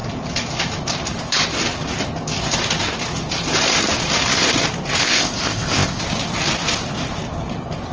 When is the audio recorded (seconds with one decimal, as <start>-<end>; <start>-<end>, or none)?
0.0-5.0; 6.0-7.9